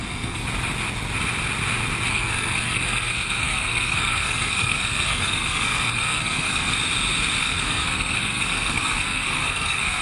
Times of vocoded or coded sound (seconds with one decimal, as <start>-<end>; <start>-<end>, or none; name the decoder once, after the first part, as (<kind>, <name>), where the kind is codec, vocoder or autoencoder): 0.0-0.4 (codec, SNAC); 2.1-6.7; 7.4-10.0